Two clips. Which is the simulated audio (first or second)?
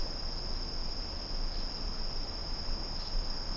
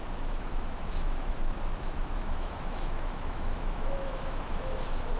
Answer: second